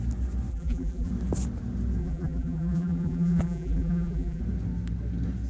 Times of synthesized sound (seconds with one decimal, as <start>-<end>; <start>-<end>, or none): 0.5-1.1; 2.0-4.4